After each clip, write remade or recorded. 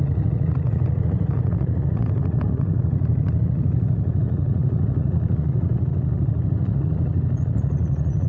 remade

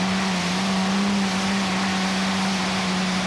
recorded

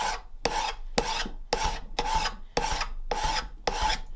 recorded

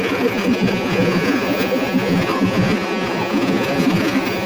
remade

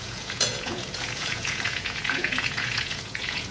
remade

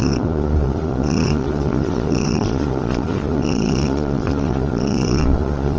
remade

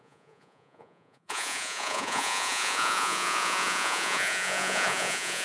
remade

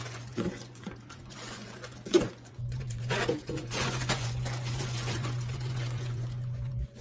remade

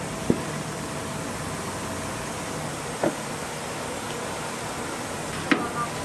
recorded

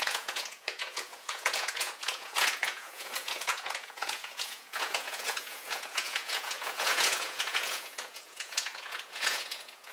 remade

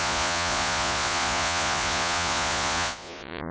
remade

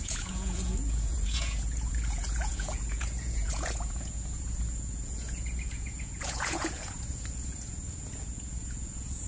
remade